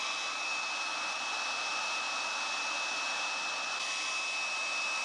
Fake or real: real